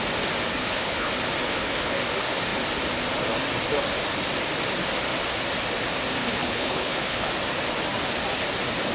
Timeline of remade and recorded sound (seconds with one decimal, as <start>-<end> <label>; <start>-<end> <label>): 0.0-0.6 recorded; 0.6-1.1 remade; 1.1-1.5 recorded; 1.5-2.0 remade; 2.0-6.2 recorded; 6.2-7.3 remade; 7.3-8.9 recorded